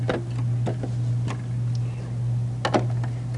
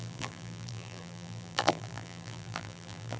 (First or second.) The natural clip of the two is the first